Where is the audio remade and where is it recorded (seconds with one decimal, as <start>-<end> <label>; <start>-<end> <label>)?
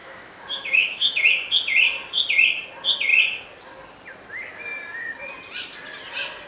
0.0-1.3 remade; 1.3-6.5 recorded